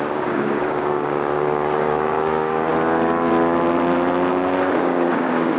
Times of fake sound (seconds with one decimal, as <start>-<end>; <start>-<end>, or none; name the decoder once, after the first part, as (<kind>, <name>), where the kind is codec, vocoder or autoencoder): 0.0-2.7 (codec, DAC); 4.3-5.6